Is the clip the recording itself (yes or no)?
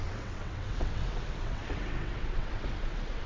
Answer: no